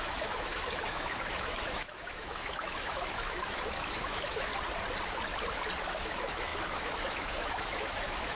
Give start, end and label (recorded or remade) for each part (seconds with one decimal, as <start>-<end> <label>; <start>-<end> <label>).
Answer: 0.0-4.5 remade; 4.5-5.8 recorded; 5.8-8.3 remade